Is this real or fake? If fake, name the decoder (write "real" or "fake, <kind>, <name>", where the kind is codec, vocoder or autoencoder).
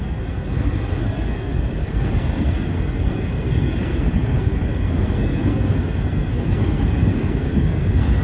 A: fake, codec, SNAC